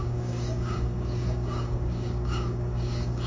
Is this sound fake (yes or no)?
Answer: yes